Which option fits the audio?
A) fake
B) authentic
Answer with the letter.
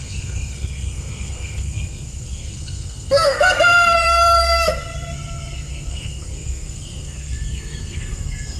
A